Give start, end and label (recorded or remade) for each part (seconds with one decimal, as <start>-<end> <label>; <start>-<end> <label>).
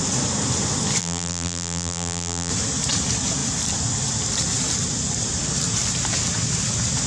0.0-1.0 recorded; 1.0-2.5 remade; 2.5-7.1 recorded